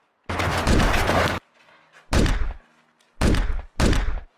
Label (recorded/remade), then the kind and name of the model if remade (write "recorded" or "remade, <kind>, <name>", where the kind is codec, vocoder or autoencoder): recorded